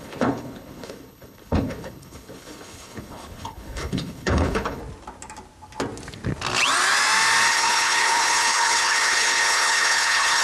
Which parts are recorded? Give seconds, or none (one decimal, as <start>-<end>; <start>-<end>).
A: 4.8-7.5